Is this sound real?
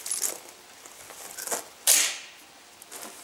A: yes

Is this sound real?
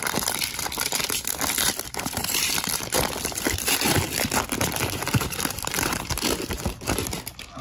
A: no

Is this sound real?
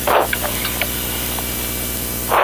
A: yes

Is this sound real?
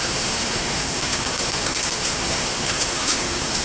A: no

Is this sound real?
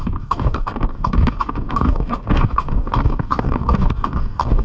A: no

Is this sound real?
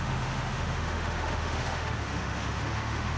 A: no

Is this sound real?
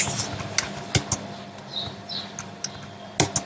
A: yes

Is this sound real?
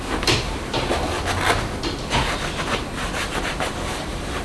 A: yes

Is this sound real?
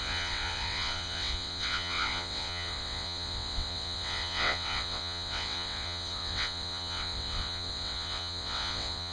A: no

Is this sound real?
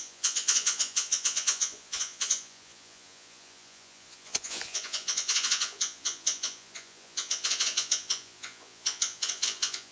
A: no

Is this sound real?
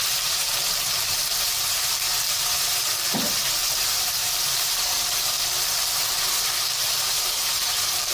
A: no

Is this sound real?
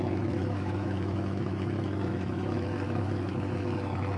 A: no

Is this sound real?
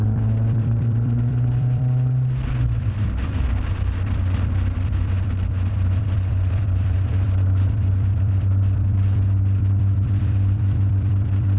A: no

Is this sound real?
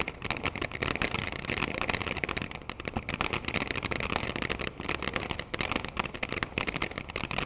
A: yes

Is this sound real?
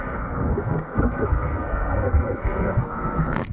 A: no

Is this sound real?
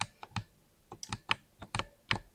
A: yes